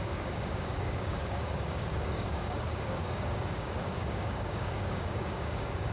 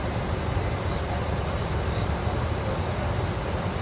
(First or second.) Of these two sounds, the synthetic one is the first